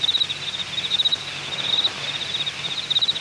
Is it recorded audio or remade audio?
recorded